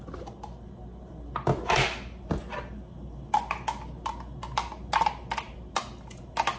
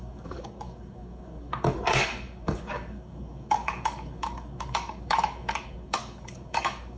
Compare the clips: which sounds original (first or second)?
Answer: first